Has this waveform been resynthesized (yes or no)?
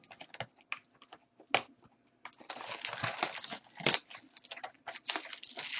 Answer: no